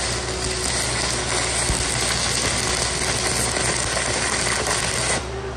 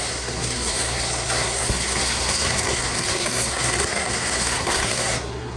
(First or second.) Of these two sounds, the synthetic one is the second